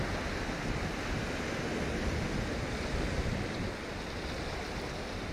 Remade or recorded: recorded